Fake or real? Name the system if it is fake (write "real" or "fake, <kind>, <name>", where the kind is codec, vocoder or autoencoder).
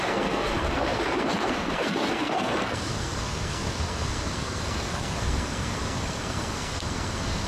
fake, codec, SNAC